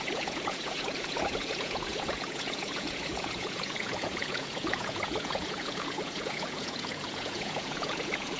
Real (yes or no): no